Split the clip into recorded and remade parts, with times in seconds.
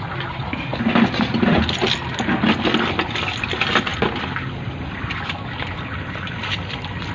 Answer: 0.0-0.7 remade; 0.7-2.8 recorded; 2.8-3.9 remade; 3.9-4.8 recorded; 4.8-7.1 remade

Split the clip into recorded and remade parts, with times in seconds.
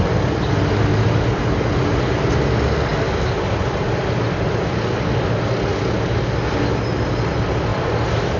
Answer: 0.0-8.4 recorded